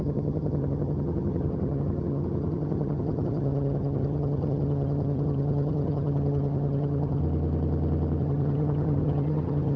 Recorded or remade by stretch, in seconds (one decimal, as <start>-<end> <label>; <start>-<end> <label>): 0.0-7.2 remade; 7.2-8.2 recorded; 8.2-9.8 remade